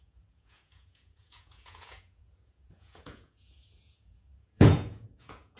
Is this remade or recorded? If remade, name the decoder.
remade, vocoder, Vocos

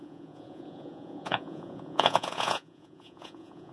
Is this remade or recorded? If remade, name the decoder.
remade, vocoder, Vocos